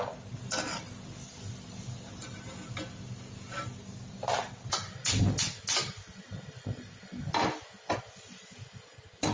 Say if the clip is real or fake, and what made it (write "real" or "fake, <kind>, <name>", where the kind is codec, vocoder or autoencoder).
real